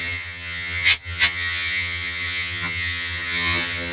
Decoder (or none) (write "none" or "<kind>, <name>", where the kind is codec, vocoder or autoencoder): vocoder, HiFi-GAN